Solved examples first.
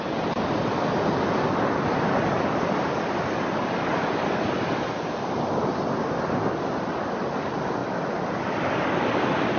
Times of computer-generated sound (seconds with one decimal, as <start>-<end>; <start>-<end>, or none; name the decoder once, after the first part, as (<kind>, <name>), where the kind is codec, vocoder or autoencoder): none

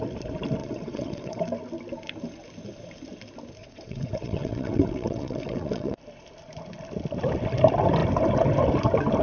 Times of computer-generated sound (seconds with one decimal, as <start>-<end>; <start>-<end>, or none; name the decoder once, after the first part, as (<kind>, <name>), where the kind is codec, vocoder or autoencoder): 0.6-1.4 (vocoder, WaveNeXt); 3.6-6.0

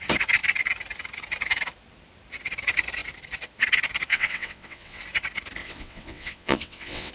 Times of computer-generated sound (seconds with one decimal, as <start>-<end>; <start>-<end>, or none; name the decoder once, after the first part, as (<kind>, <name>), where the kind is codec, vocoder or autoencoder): 4.1-5.0 (vocoder, WaveNeXt); 5.6-7.1